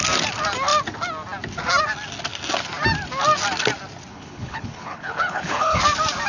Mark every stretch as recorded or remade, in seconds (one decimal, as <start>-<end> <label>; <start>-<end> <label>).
0.0-4.1 recorded; 4.1-5.8 remade; 5.8-6.3 recorded